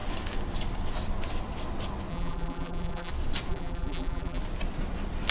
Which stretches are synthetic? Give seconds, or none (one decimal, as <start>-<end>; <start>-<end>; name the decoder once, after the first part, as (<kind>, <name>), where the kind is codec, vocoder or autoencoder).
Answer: 2.1-3.1 (vocoder, BigVGAN v2); 3.5-4.4